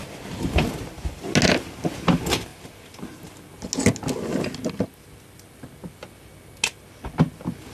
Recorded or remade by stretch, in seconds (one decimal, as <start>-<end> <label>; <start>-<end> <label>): 0.0-7.7 recorded